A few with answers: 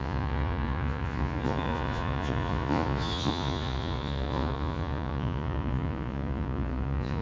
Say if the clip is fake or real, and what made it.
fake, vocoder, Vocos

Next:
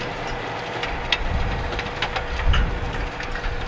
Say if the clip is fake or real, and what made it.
real